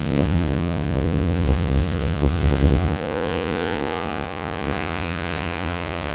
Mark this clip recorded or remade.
remade